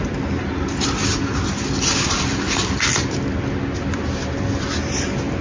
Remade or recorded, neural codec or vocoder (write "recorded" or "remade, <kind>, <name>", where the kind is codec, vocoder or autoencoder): recorded